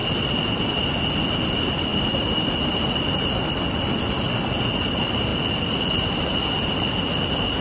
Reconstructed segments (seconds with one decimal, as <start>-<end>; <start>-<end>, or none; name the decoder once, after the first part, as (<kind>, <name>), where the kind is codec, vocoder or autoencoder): 0.0-0.5 (vocoder, BigVGAN v2); 1.9-3.5